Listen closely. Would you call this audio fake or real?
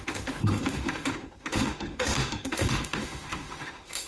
fake